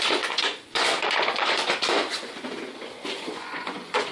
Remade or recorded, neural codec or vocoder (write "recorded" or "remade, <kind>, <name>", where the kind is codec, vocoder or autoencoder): remade, vocoder, Vocos